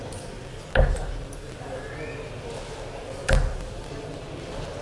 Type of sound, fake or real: real